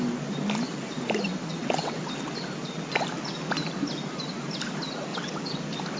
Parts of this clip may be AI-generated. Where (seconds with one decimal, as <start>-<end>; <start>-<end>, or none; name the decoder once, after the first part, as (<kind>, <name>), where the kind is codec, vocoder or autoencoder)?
1.5-2.0 (vocoder, WaveNeXt); 5.1-5.6